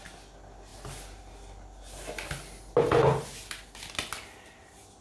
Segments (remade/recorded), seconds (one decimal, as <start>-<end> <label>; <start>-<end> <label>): 0.0-5.0 recorded